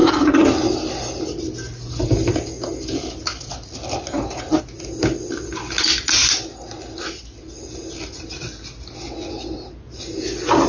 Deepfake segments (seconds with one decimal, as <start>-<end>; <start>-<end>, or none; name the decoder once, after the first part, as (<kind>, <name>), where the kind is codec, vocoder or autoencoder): none